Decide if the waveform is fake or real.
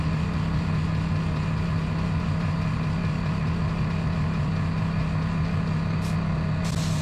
real